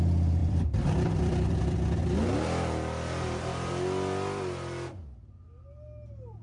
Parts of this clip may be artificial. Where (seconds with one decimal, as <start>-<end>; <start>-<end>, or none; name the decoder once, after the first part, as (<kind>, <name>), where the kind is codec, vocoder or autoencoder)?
0.4-1.6 (vocoder, BigVGAN v2)